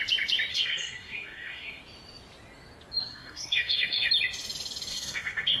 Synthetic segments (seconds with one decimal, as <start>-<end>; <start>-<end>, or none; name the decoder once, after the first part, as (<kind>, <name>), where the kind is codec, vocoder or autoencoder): 0.5-1.8 (codec, SNAC); 3.0-4.1; 4.9-5.6